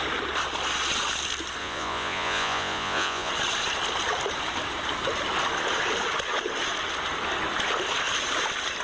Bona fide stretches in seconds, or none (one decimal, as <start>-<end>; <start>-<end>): 0.0-1.6; 3.3-8.8